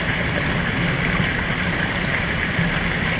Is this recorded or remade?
recorded